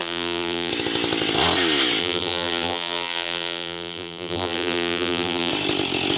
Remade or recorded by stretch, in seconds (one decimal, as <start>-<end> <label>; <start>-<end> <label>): 0.0-0.7 remade; 0.7-2.0 recorded; 2.0-5.5 remade; 5.5-6.2 recorded